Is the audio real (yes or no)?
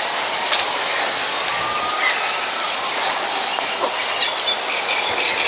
yes